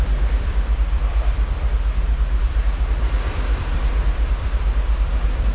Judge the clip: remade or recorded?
remade